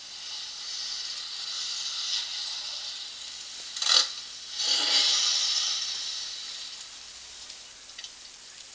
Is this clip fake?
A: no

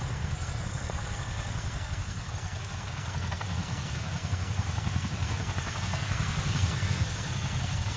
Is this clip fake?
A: yes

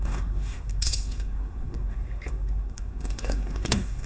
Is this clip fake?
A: yes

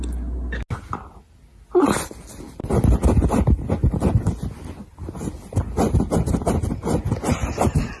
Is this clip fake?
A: no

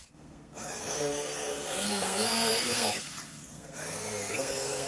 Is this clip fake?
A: yes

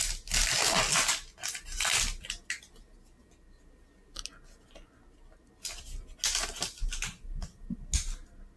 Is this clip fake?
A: no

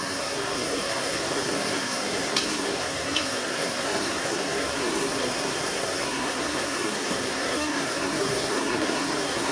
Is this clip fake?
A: yes